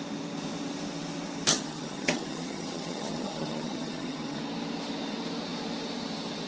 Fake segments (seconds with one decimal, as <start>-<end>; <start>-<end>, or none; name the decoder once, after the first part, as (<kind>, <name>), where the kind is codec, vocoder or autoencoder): 1.5-4.4 (vocoder, HiFi-GAN)